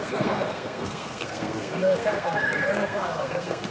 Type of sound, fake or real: fake